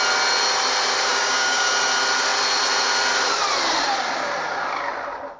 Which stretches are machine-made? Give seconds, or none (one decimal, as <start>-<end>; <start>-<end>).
1.1-1.7

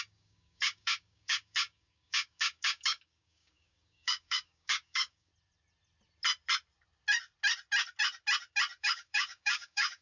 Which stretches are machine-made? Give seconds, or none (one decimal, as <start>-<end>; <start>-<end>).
0.0-5.3; 8.8-10.0

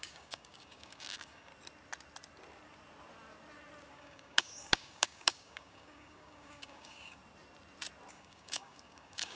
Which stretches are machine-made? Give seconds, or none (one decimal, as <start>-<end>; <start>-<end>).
0.0-1.5; 3.9-7.2; 8.1-9.4

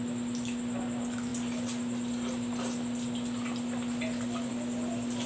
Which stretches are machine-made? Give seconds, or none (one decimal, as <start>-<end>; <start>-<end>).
none

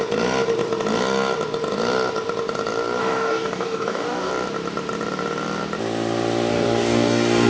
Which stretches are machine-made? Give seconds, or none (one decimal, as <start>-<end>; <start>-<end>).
3.0-4.3; 6.5-7.5

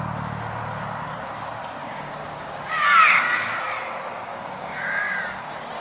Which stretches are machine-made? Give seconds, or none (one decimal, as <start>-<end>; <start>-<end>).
1.8-3.6; 4.3-5.2

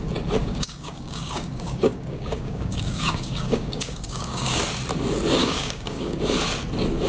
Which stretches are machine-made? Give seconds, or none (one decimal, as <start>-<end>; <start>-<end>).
0.4-4.6; 5.4-6.2

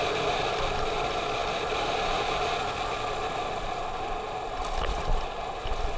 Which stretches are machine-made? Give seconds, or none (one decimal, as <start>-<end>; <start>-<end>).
none